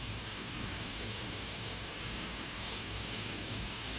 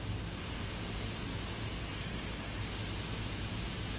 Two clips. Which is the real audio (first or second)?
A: second